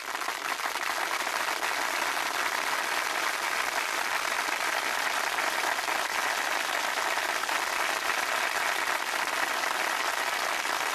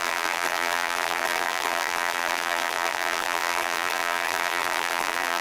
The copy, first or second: second